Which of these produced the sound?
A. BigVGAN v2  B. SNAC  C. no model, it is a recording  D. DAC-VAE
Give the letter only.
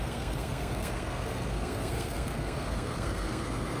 B